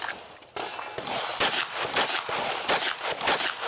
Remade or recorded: recorded